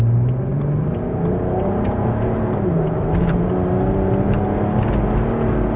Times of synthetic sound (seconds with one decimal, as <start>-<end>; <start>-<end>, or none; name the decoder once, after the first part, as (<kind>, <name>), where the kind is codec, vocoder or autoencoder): 0.5-3.5 (vocoder, BigVGAN v2)